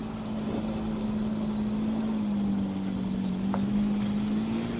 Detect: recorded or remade recorded